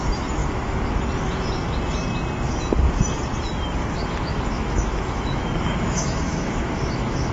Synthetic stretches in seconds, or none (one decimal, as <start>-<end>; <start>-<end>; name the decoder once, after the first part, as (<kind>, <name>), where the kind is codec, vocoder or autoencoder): 0.4-1.0 (autoencoder, DAC-VAE); 3.8-7.3